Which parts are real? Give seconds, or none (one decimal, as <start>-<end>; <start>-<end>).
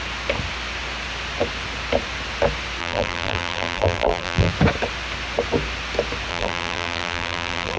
0.0-2.8; 4.5-6.3